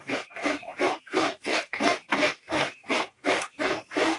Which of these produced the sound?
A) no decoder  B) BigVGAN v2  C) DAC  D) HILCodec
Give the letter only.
C